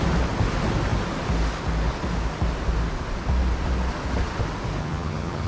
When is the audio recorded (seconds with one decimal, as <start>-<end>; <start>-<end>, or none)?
0.0-4.8